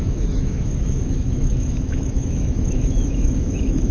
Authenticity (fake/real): fake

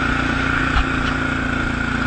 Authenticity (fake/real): real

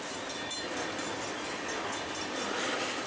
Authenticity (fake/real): real